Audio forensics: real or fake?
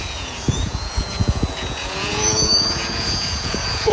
fake